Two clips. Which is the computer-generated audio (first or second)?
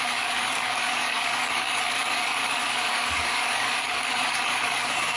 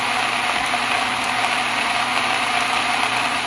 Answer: first